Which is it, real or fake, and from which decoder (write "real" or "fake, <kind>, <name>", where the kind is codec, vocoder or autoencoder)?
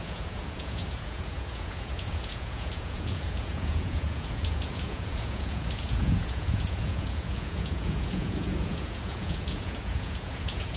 fake, vocoder, Vocos